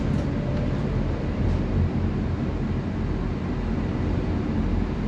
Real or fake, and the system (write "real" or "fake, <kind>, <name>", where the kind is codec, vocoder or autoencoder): real